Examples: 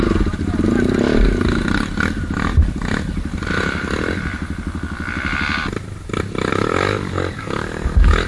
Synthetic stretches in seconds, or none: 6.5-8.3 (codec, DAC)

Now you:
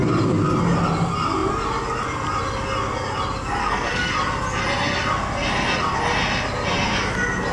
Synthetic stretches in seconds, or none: 3.6-4.1 (codec, SNAC)

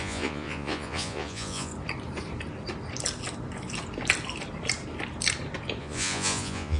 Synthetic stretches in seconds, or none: 0.0-1.7 (vocoder, Vocos); 5.8-6.8